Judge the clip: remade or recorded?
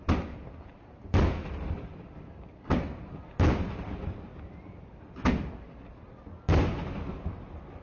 recorded